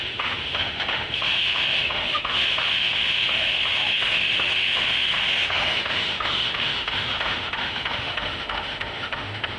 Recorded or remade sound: remade